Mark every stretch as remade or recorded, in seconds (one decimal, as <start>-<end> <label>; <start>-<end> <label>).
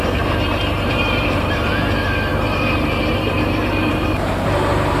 0.0-5.0 remade